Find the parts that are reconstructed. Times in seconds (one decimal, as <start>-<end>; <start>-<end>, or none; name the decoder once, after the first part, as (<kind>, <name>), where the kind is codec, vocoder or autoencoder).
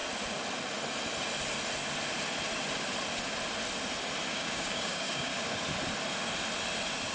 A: 4.3-5.3 (codec, DAC)